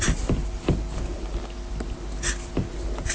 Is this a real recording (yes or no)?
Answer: yes